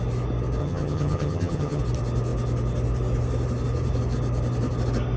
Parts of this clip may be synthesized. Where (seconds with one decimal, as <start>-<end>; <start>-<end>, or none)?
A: 0.6-1.8